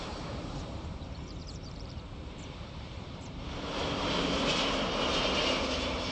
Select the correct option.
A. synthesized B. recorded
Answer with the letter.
A